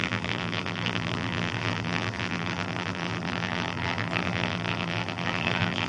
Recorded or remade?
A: remade